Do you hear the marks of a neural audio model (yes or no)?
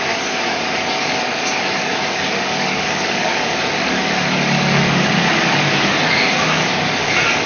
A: yes